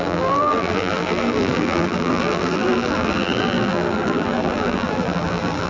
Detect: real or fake fake